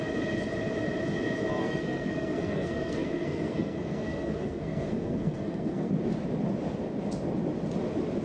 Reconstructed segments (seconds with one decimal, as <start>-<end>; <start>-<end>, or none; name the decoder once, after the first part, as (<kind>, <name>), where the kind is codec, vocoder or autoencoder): 1.6-5.9 (codec, SNAC)